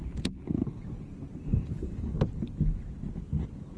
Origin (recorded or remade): recorded